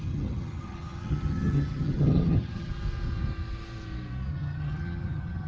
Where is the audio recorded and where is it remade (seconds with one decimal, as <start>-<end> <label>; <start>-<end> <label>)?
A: 0.0-2.7 remade; 2.7-4.3 recorded; 4.3-5.5 remade